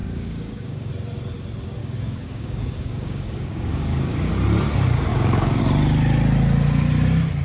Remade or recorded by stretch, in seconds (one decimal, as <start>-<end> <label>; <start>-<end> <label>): 0.0-0.9 remade; 0.9-1.8 recorded; 1.8-4.3 remade; 4.3-5.1 recorded; 5.1-5.6 remade; 5.6-7.4 recorded